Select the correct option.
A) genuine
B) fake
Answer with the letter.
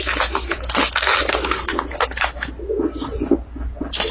A